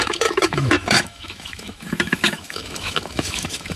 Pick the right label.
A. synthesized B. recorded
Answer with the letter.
A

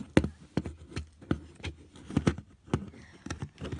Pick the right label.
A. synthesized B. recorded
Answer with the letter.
B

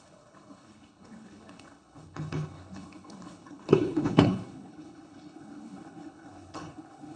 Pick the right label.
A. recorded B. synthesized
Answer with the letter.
B